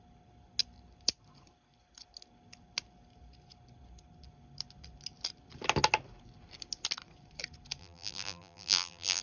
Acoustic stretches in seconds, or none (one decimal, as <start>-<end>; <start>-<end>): 0.0-7.8